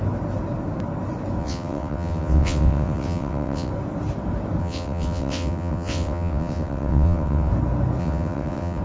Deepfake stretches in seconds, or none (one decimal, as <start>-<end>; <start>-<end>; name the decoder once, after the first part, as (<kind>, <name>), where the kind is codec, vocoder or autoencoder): 1.4-3.7 (vocoder, WaveNeXt); 4.6-7.5; 8.0-8.8